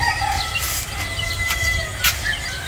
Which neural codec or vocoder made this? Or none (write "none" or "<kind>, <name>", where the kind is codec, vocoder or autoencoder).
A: none